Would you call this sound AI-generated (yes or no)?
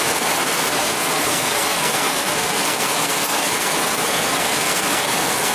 yes